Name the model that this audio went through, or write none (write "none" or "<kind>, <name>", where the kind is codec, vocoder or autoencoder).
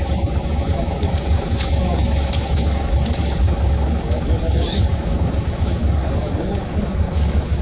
codec, DAC